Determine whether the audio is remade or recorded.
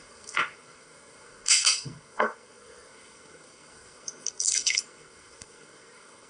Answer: remade